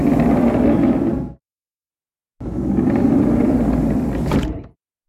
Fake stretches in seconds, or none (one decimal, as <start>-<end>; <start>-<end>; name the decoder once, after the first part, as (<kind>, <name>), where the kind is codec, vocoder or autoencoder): 1.1-1.9 (vocoder, BigVGAN v2)